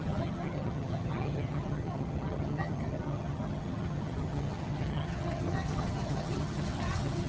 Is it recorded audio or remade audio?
remade